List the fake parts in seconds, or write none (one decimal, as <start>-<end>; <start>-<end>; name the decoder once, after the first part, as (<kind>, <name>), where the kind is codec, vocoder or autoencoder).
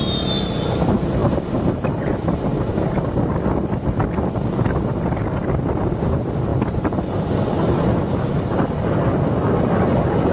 none